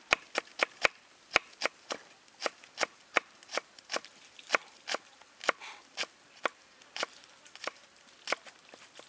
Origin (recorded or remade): recorded